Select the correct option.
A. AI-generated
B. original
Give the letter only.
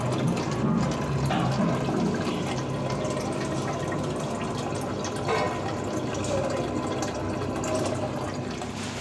B